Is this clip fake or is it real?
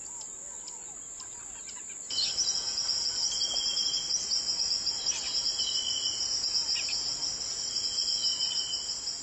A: real